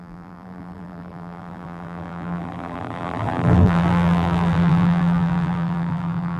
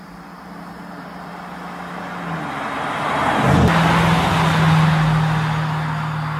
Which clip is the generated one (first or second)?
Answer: first